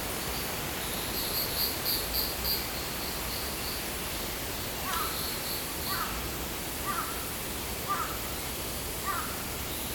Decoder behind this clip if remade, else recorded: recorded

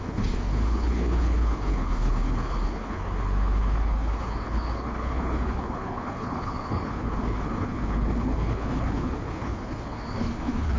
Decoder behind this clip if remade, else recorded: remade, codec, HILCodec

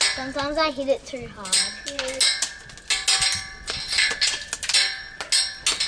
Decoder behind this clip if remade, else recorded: recorded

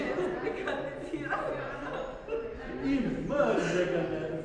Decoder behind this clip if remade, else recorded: recorded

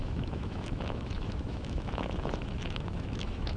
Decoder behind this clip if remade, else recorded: remade, autoencoder, DAC-VAE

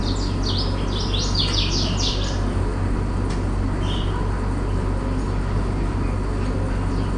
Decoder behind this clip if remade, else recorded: recorded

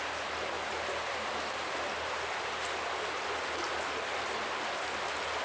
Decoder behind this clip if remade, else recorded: recorded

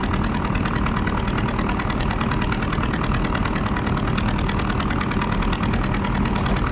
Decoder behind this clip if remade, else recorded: recorded